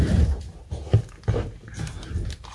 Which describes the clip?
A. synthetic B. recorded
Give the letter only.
B